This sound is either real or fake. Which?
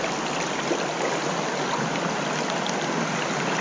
real